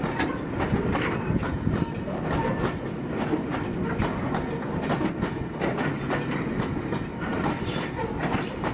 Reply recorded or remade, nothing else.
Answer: recorded